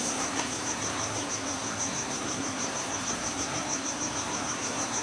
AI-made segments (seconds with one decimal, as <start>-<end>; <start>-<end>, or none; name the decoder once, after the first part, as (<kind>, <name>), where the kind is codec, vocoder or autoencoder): 0.0-5.0 (codec, SNAC)